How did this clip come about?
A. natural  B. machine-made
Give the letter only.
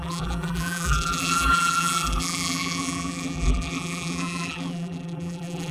B